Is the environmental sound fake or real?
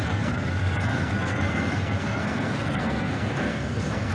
fake